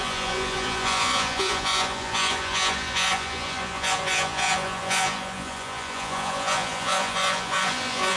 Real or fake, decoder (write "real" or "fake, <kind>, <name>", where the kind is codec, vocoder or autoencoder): fake, vocoder, Vocos